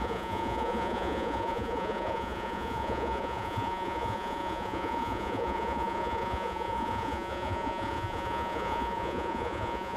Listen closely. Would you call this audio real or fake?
fake